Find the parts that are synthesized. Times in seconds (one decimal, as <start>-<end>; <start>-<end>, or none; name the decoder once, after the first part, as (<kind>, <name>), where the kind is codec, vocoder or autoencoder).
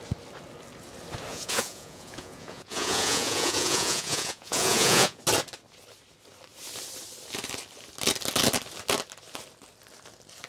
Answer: 1.3-5.2 (vocoder, Vocos)